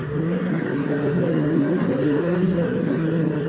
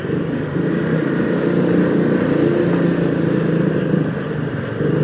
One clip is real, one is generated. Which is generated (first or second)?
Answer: first